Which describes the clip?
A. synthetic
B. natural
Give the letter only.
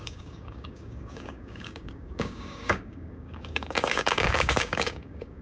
A